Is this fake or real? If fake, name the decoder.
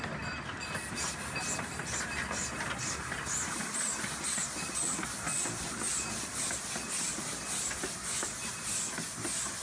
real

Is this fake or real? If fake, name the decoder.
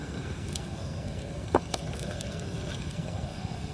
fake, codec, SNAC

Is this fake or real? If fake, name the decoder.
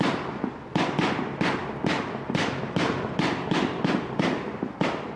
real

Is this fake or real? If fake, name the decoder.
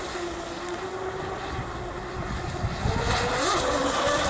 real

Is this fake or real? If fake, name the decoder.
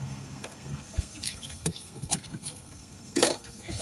fake, codec, SNAC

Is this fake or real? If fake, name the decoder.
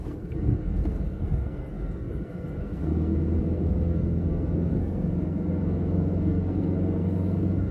fake, codec, SNAC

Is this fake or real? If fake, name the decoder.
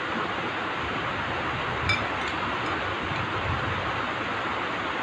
real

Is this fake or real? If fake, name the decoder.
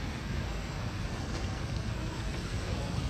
fake, codec, SNAC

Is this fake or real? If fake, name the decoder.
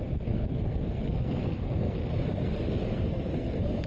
fake, codec, SNAC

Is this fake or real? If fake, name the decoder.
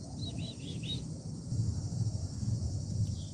real